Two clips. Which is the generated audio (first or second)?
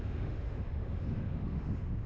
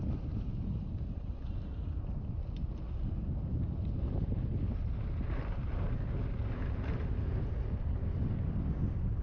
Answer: first